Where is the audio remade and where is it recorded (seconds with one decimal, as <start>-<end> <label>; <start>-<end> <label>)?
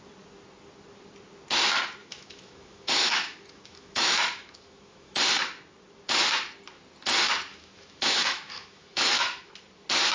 0.0-2.0 recorded; 2.0-5.2 remade; 5.2-7.5 recorded; 7.5-9.5 remade; 9.5-10.1 recorded